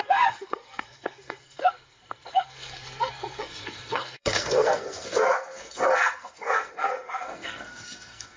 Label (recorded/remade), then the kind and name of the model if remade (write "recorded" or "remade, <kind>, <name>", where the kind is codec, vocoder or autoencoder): remade, codec, SNAC